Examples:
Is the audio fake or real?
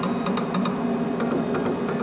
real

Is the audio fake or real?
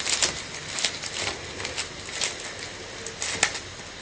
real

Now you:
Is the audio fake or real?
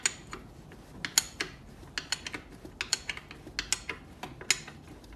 real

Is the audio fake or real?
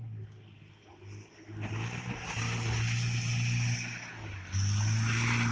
real